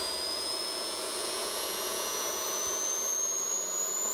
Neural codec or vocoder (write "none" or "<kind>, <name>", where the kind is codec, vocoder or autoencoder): vocoder, Vocos